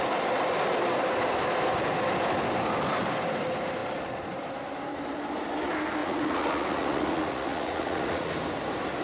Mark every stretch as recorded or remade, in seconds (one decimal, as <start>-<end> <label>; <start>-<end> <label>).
0.0-6.0 recorded; 6.0-8.3 remade; 8.3-9.0 recorded